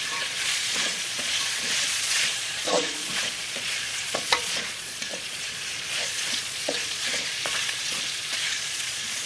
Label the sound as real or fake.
fake